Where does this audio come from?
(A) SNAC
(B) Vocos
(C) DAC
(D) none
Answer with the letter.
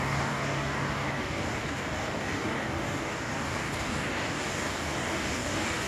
C